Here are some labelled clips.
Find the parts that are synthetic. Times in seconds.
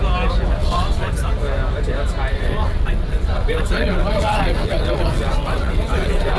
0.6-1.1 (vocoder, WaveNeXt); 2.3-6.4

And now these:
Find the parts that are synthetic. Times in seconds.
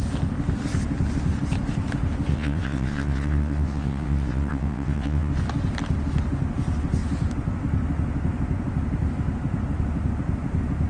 2.3-5.3 (vocoder, WaveNeXt)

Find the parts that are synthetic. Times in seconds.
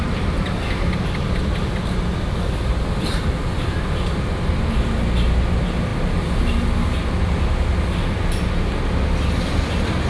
none